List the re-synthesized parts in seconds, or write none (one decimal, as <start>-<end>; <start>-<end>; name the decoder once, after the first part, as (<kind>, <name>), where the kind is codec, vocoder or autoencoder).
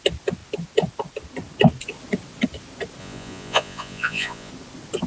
3.0-4.5 (vocoder, Vocos)